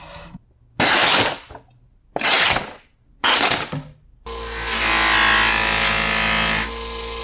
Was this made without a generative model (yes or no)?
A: yes